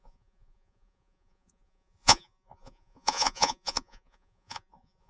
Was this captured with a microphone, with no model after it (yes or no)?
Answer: no